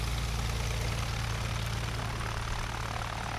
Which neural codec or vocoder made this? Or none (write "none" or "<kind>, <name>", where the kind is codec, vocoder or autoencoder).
none